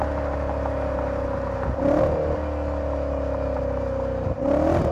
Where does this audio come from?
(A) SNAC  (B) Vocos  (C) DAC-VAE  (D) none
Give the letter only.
D